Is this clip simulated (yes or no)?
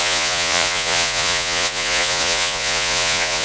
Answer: yes